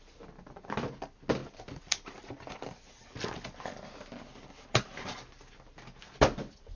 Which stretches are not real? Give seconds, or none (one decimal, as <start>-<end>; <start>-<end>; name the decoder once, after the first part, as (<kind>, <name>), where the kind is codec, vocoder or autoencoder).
none